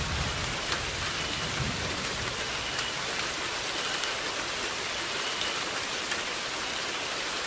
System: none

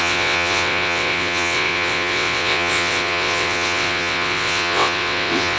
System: vocoder, WaveNeXt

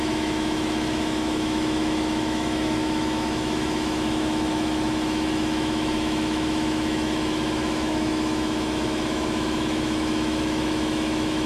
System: autoencoder, DAC-VAE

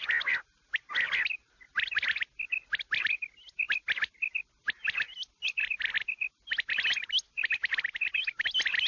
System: none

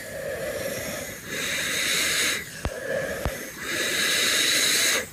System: none